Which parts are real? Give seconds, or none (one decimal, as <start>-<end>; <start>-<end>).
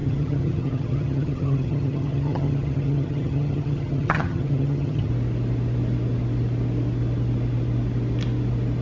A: 5.1-8.8